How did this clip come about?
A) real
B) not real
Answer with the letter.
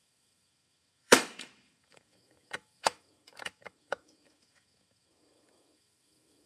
B